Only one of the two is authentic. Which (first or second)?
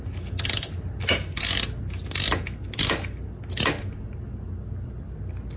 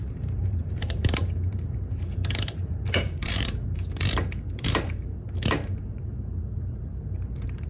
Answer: first